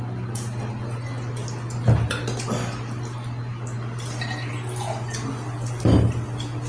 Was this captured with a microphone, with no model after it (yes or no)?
yes